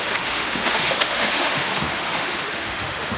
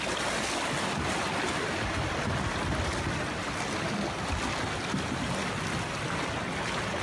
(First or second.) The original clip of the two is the second